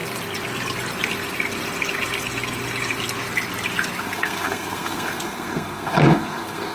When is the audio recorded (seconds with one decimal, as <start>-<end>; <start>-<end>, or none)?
0.0-4.0